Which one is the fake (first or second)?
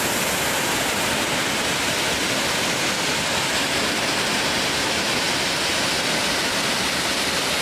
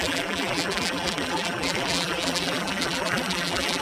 second